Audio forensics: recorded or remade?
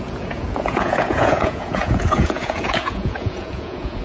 remade